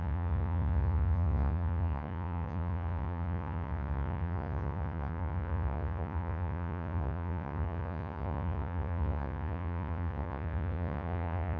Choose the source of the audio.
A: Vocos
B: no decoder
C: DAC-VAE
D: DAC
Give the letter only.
A